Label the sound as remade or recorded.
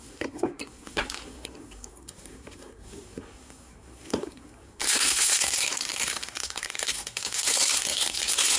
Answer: remade